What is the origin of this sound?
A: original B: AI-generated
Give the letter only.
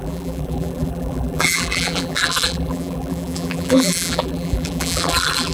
B